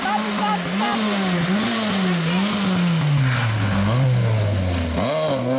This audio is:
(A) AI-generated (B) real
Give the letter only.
B